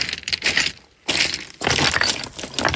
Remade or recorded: recorded